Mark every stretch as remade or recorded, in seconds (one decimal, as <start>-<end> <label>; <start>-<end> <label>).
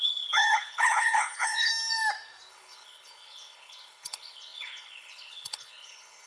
0.0-1.7 remade; 1.7-2.5 recorded; 2.5-6.3 remade